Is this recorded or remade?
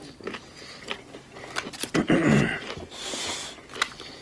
recorded